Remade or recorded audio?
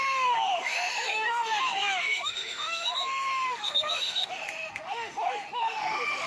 remade